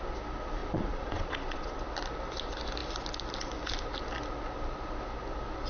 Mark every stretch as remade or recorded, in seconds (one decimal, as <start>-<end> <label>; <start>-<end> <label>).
0.0-0.6 recorded; 0.6-1.7 remade; 1.7-5.7 recorded